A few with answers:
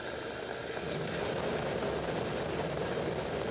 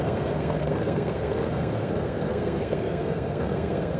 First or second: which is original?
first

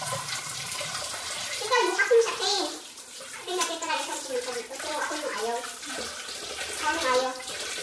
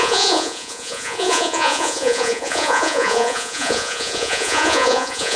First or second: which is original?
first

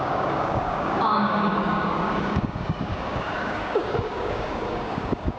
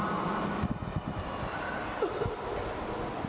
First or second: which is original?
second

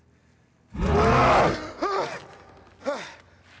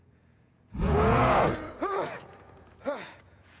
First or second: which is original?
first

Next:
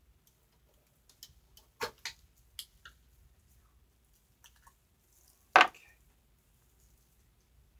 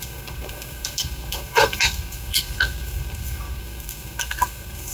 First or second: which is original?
first